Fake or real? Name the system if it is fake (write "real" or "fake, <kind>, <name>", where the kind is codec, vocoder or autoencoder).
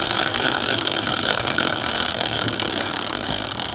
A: fake, codec, SNAC